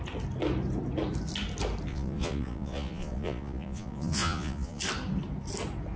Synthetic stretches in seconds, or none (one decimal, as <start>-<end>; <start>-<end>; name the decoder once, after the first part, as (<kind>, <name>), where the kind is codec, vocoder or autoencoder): 1.9-4.8 (vocoder, Vocos)